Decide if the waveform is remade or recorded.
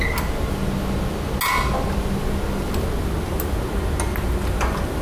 recorded